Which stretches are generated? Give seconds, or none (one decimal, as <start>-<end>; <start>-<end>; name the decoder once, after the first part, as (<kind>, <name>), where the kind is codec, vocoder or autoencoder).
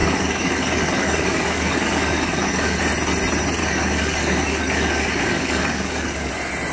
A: 0.0-2.8 (codec, DAC); 3.6-6.3